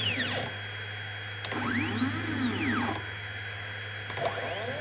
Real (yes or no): yes